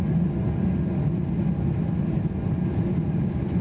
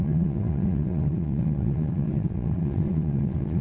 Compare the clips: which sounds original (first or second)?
first